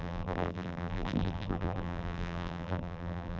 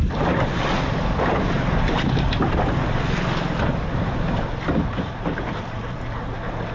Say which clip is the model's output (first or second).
first